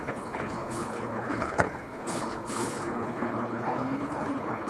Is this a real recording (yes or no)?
no